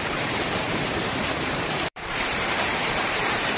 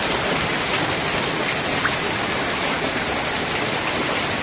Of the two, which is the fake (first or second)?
first